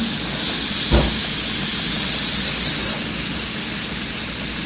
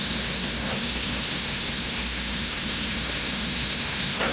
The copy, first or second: second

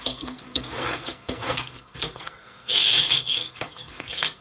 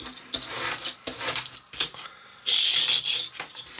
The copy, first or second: first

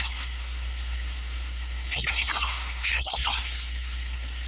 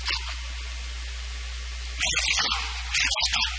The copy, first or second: first